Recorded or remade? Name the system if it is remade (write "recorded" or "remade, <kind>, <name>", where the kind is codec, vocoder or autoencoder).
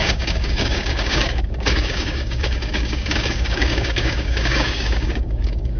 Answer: remade, codec, DAC